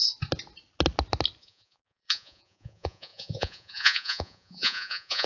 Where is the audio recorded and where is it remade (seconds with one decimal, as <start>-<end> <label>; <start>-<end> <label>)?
0.0-1.4 recorded; 1.4-5.3 remade